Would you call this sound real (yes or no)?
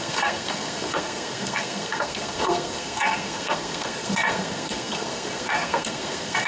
no